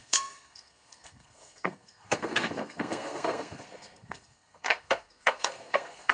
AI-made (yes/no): yes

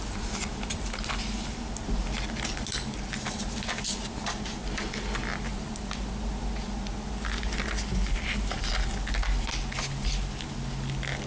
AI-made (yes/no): no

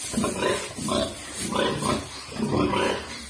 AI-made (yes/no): no